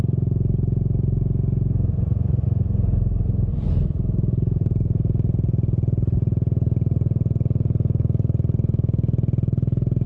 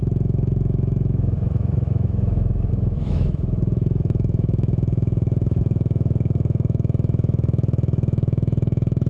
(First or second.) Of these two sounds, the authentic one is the first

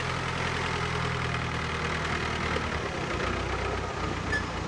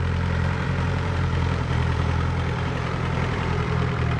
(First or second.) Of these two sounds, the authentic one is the first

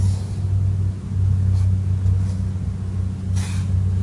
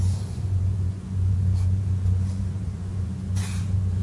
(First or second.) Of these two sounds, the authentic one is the first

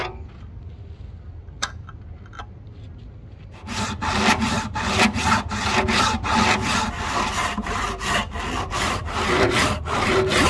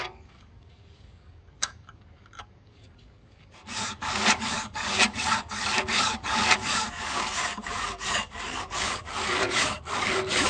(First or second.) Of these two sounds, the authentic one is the first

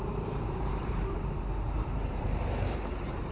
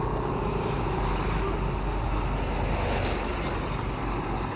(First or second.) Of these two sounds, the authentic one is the second